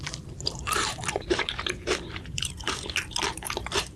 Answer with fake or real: fake